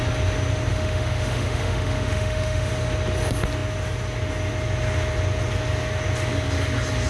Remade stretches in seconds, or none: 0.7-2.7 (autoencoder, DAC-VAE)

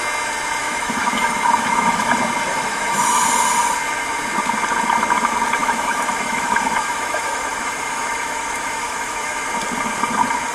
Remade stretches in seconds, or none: 0.6-2.1 (autoencoder, DAC-VAE); 2.5-3.2; 5.6-9.5

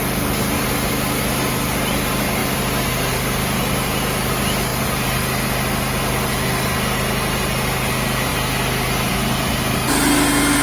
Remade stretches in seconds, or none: none

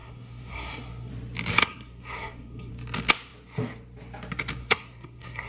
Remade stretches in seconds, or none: 0.0-1.1 (codec, SNAC); 1.6-2.7; 4.6-5.5

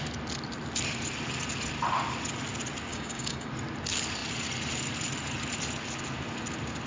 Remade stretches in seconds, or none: 2.9-3.5 (codec, DAC)

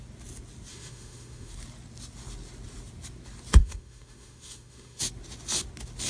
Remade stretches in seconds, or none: 0.7-1.5 (autoencoder, DAC-VAE); 3.6-5.0

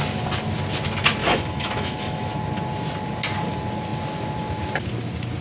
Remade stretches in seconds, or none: 1.2-2.4 (autoencoder, DAC-VAE)

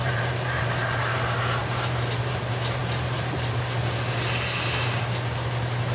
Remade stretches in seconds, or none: 0.0-0.6 (vocoder, BigVGAN v2); 1.6-2.4; 2.8-3.6